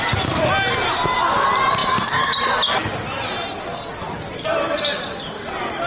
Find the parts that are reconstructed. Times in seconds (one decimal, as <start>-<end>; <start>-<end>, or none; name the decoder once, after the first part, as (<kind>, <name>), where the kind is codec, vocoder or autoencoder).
none